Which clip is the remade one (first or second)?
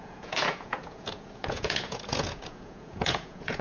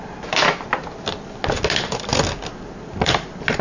first